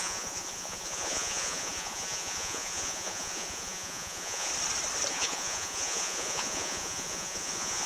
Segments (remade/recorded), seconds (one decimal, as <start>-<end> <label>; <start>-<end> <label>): 0.0-4.5 remade; 4.5-5.1 recorded; 5.1-7.9 remade

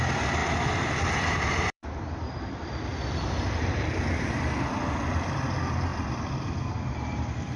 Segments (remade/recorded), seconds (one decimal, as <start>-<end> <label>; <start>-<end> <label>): 0.0-0.4 remade; 0.4-1.0 recorded; 1.0-2.9 remade; 2.9-3.6 recorded; 3.6-7.6 remade